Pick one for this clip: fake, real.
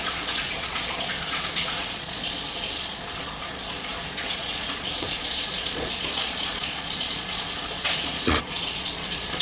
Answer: fake